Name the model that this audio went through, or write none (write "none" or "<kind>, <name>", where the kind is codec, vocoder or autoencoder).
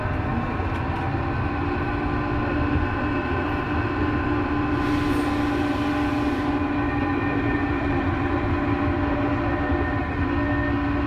none